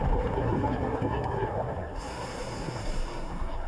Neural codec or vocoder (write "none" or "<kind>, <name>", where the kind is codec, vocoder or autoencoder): codec, SNAC